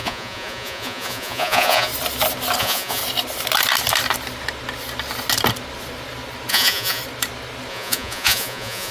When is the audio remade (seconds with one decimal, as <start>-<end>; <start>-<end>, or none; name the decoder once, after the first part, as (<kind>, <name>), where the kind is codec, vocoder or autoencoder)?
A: 0.0-1.9 (vocoder, Vocos); 2.6-3.0; 6.5-7.0; 7.7-8.9